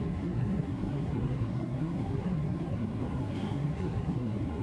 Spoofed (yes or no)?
yes